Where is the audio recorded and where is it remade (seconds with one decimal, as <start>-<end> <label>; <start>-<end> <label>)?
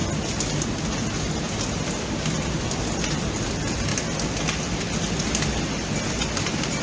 0.0-6.8 recorded